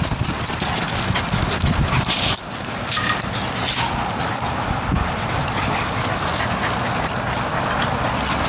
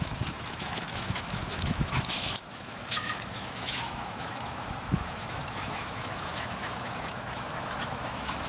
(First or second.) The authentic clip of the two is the first